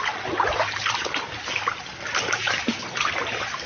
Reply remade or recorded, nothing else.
recorded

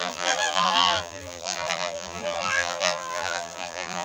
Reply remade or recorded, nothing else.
remade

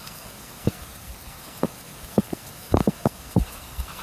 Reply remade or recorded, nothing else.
remade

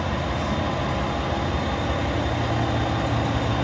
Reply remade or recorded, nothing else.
recorded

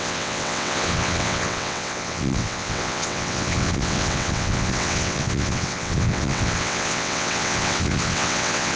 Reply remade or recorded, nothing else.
remade